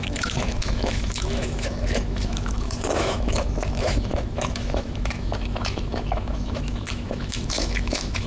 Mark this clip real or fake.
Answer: fake